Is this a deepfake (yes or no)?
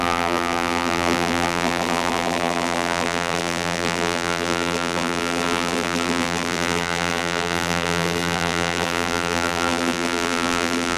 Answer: yes